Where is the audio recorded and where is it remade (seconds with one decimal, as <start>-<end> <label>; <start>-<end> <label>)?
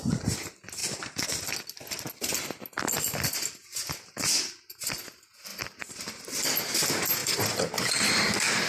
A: 0.0-0.8 recorded; 0.8-1.5 remade; 1.5-5.5 recorded; 5.5-6.2 remade; 6.2-7.2 recorded; 7.2-8.7 remade